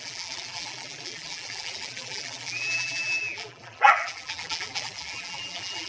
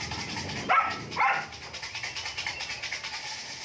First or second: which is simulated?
first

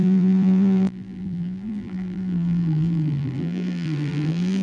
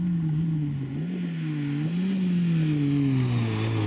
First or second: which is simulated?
first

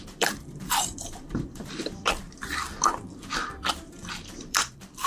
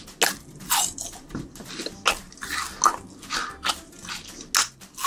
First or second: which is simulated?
first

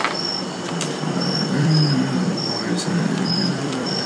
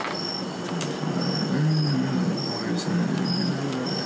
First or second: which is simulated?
first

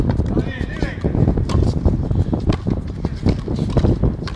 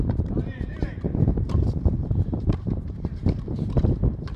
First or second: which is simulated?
second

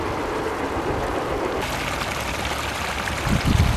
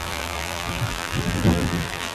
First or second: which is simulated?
second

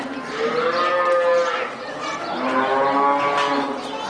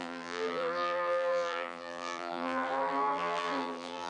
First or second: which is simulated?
second